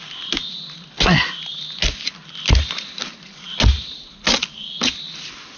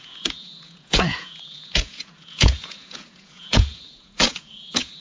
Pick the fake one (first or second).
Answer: second